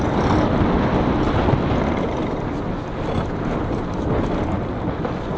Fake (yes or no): no